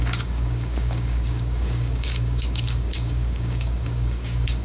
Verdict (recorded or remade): remade